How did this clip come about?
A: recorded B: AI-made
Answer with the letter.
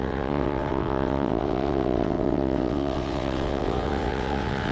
B